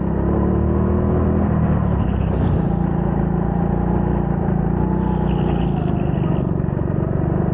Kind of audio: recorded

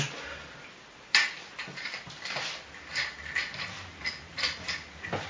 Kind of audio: recorded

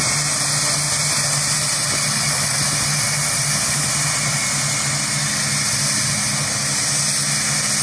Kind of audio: recorded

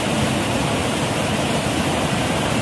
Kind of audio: remade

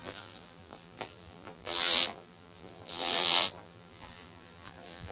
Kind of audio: remade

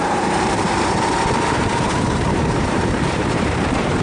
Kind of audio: remade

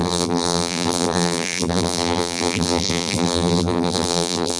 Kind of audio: remade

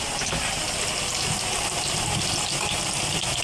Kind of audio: recorded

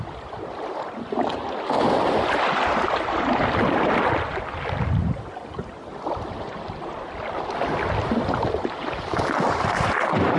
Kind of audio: recorded